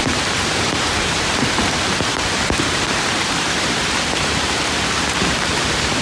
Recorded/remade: remade